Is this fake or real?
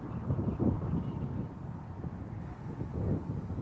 real